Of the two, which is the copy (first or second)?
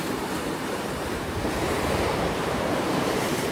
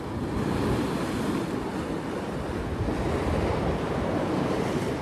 first